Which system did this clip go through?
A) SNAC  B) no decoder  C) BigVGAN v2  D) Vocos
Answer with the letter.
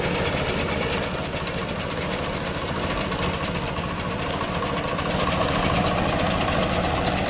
B